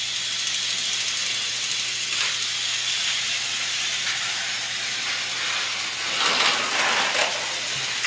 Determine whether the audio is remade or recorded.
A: recorded